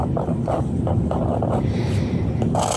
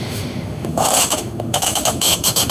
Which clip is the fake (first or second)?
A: second